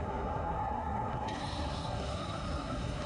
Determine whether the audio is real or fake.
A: fake